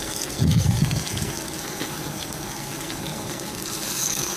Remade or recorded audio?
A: remade